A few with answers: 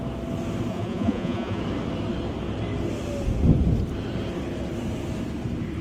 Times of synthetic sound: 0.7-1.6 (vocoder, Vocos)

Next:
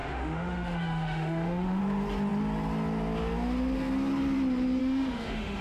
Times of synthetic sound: 0.0-1.8 (autoencoder, DAC-VAE); 4.8-5.6

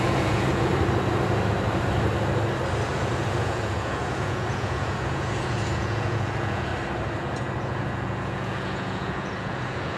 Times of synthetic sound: 0.0-0.7 (vocoder, Vocos); 2.9-6.7; 7.2-10.0